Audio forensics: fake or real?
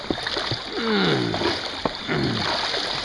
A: real